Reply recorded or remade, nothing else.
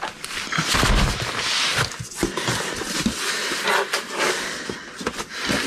recorded